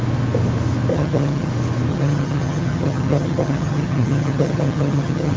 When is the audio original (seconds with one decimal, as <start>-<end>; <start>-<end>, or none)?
0.0-0.9; 1.5-1.9